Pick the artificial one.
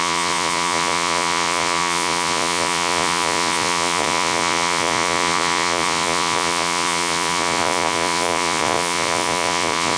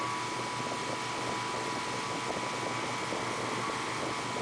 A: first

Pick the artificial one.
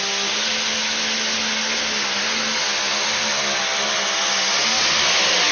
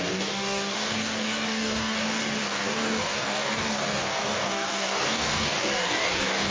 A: second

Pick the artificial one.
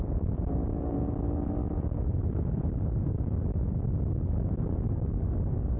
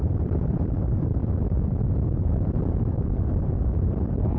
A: second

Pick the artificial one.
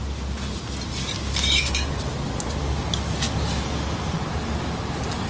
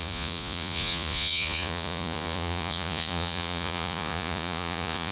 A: second